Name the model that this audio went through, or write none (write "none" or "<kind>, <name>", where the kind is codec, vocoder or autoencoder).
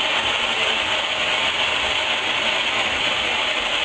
none